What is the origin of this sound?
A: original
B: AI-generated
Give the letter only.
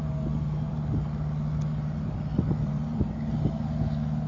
A